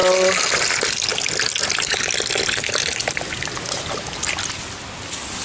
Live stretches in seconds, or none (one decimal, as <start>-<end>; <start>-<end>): 0.0-5.4